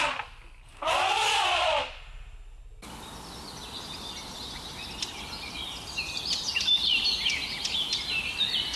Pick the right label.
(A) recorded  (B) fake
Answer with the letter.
A